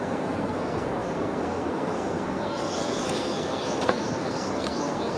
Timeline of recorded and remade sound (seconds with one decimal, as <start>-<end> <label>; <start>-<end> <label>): 0.0-5.2 remade